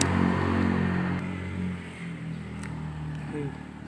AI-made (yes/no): no